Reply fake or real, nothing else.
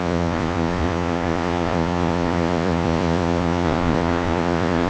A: fake